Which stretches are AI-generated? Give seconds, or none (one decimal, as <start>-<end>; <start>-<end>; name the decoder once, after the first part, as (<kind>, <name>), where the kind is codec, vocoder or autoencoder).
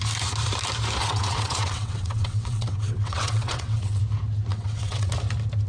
1.0-4.0 (vocoder, WaveNeXt); 4.5-5.1